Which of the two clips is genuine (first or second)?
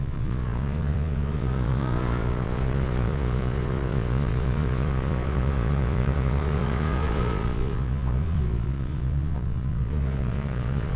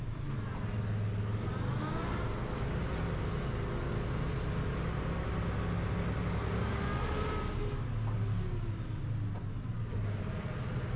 second